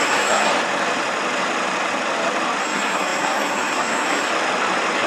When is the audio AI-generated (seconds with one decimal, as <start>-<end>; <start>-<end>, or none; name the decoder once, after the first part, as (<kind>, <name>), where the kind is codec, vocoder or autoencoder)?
0.0-0.5 (codec, SNAC); 2.6-4.3